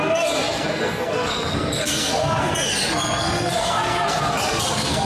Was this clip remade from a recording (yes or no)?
yes